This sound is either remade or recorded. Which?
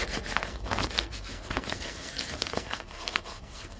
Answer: remade